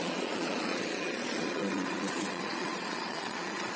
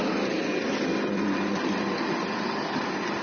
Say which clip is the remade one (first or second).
first